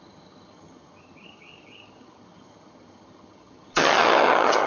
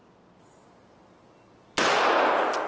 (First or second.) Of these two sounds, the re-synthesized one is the first